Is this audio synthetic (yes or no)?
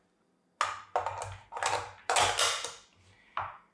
no